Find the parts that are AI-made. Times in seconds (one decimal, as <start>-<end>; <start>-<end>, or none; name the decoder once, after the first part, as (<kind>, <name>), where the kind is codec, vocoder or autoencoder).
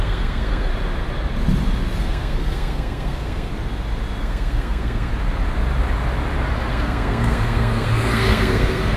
0.0-0.7 (codec, SNAC); 2.0-3.5; 4.2-5.1; 6.7-9.0